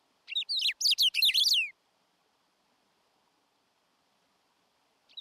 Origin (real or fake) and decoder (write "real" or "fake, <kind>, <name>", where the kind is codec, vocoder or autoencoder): real